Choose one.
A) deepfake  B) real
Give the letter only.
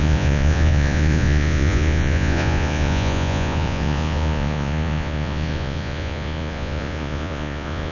A